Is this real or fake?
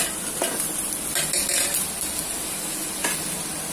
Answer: real